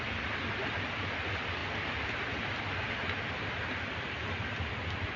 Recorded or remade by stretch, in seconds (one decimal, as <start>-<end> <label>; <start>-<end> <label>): 0.0-5.2 recorded